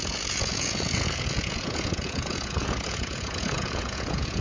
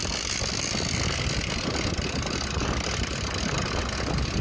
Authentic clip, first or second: second